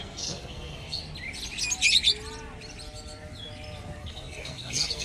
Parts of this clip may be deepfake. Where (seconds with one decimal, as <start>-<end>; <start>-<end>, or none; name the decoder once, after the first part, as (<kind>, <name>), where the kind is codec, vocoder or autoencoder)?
0.0-1.0 (codec, SNAC); 4.0-5.0